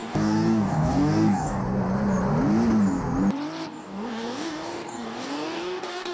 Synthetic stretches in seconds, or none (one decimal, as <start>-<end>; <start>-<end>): 0.0-1.6; 3.8-6.1